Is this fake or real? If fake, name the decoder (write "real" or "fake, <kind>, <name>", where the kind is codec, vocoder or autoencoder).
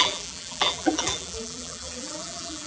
fake, vocoder, BigVGAN v2